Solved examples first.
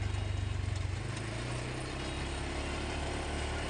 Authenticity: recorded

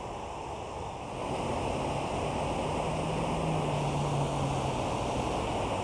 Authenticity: recorded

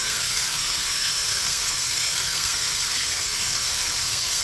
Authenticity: remade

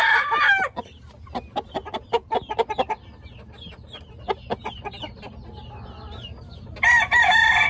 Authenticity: recorded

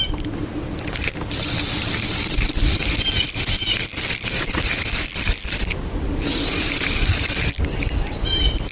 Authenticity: recorded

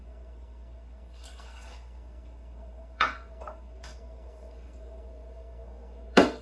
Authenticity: remade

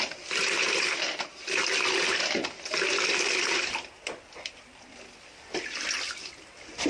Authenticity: recorded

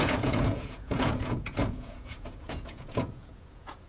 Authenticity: remade